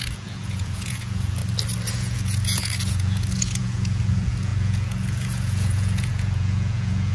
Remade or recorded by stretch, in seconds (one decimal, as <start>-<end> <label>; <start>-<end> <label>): 0.0-1.4 remade; 1.4-1.9 recorded; 1.9-7.1 remade